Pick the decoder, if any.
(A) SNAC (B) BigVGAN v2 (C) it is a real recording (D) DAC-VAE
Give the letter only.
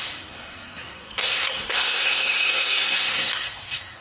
A